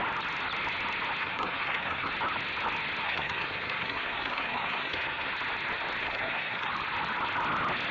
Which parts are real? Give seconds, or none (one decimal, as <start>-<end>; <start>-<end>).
0.0-1.2; 2.1-3.0; 5.3-6.0; 6.7-7.9